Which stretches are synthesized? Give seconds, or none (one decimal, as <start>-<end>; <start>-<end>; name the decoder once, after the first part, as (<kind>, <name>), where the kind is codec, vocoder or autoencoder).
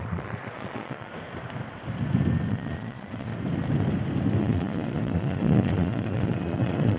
0.0-1.1 (vocoder, Vocos); 2.5-3.3; 4.4-7.0